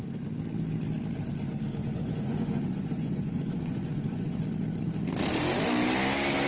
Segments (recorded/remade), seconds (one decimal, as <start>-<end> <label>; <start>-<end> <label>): 0.0-1.8 recorded; 1.8-4.4 remade; 4.4-6.5 recorded